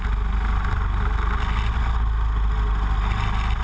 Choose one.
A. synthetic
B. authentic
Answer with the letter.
B